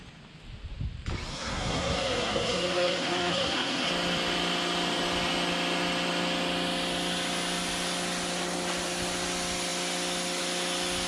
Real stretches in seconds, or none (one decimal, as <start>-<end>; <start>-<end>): 0.0-1.3; 3.9-11.1